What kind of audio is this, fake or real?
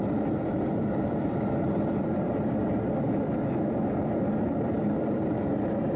fake